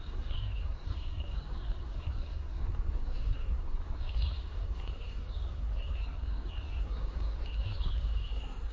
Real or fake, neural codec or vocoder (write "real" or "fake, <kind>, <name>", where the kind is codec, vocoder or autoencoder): fake, codec, SNAC